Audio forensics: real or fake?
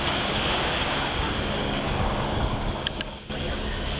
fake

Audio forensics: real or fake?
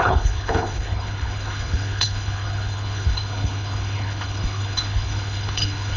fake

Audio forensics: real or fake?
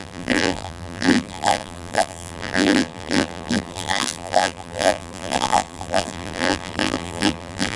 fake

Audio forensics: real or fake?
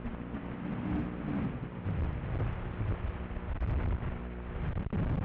real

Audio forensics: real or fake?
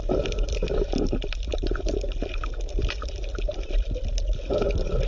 real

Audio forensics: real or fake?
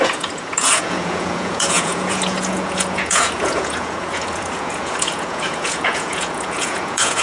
fake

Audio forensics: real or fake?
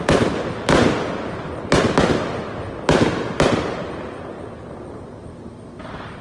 real